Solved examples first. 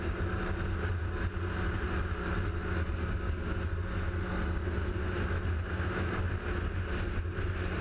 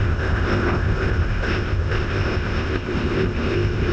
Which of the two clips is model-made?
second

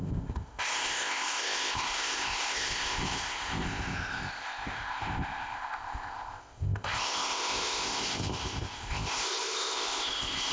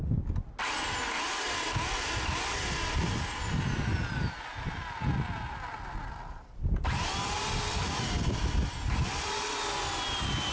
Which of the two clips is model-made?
first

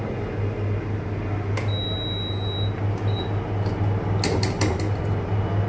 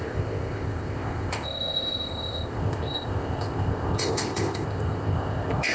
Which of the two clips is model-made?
second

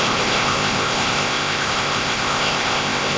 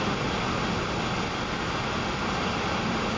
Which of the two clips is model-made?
first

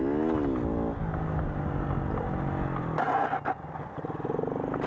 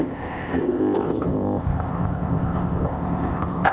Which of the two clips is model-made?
second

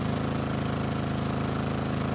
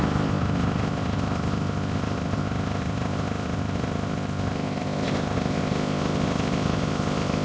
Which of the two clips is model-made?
second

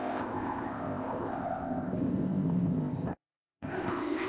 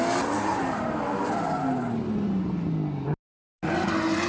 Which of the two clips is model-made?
first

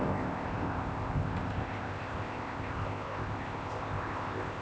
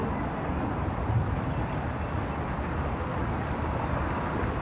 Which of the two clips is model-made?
first